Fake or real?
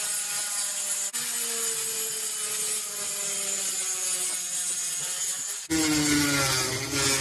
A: real